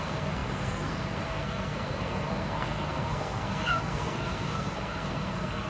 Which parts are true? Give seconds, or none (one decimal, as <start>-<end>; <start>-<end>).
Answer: none